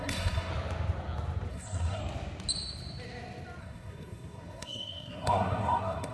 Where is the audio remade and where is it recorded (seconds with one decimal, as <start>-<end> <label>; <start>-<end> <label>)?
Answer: 0.0-0.5 remade; 0.5-1.5 recorded; 1.5-2.0 remade; 2.0-3.6 recorded; 3.6-6.1 remade